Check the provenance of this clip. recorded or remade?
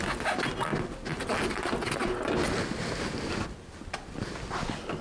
recorded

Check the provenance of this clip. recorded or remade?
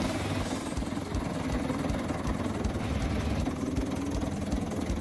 recorded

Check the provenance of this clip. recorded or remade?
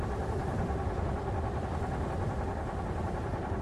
recorded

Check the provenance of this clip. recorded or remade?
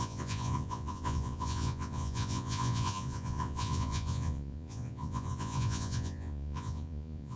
remade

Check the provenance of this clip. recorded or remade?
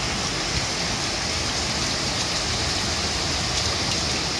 recorded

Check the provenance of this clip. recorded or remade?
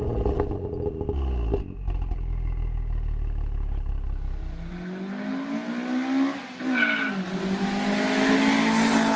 recorded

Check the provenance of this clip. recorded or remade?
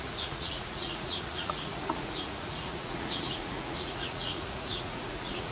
remade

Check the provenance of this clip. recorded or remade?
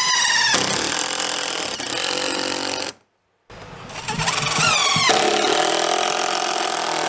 recorded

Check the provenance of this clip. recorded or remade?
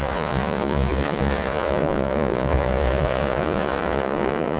remade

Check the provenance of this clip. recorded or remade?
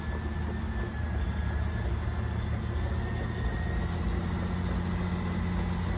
recorded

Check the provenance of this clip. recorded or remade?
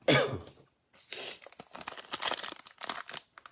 recorded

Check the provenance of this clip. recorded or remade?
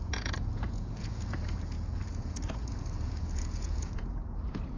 remade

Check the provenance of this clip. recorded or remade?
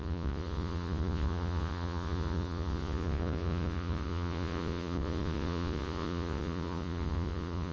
remade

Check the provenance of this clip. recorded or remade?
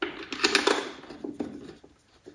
recorded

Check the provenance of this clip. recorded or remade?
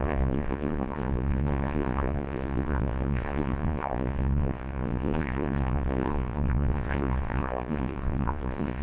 remade